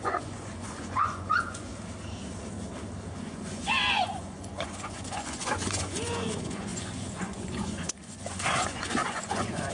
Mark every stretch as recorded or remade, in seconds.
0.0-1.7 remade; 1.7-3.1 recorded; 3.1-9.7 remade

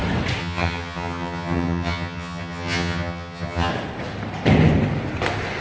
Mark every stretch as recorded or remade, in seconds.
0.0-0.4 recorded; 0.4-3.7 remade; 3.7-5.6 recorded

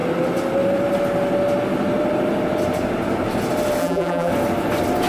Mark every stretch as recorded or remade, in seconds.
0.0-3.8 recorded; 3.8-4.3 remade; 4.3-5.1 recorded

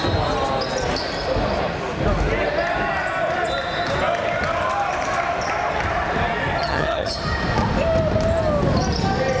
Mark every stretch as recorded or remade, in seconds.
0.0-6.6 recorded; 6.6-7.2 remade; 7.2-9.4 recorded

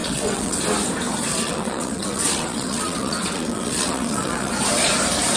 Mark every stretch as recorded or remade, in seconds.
0.0-0.6 remade; 0.6-1.3 recorded; 1.3-4.5 remade; 4.5-5.4 recorded

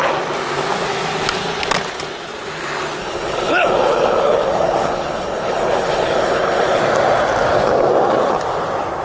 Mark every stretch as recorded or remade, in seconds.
0.0-3.0 recorded; 3.0-6.8 remade; 6.8-9.0 recorded

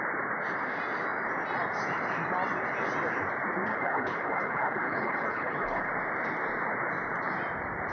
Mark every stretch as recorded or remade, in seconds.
0.0-3.7 recorded; 3.7-5.9 remade; 5.9-7.9 recorded